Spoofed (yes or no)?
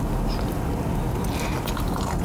no